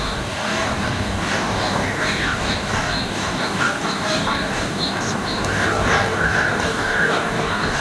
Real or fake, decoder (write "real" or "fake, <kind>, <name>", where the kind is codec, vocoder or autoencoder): fake, codec, DAC